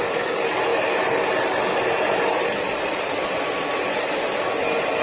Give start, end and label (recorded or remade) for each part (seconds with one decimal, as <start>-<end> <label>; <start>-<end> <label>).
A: 0.0-5.0 recorded

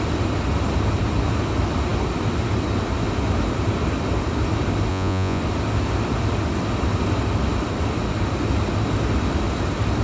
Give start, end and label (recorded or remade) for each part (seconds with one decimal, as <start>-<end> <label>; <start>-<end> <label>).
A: 0.0-4.9 recorded; 4.9-5.4 remade; 5.4-10.0 recorded

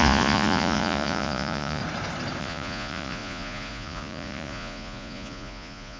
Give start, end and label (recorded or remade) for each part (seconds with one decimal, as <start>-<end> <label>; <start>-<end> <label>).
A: 0.0-1.8 remade; 1.8-2.4 recorded; 2.4-6.0 remade

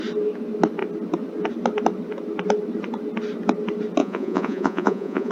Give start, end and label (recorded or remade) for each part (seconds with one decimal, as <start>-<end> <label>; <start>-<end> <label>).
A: 0.0-4.0 recorded; 4.0-5.3 remade

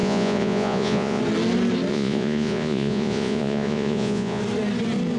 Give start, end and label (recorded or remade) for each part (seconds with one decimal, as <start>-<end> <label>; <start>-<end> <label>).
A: 0.0-1.2 remade; 1.2-1.9 recorded; 1.9-4.4 remade; 4.4-5.2 recorded

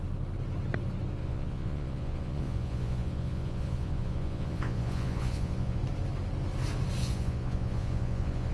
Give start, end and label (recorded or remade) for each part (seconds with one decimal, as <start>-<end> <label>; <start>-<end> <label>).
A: 0.0-1.2 recorded; 1.2-5.8 remade; 5.8-7.0 recorded; 7.0-8.5 remade